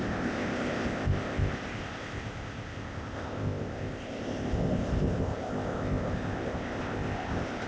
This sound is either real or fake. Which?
fake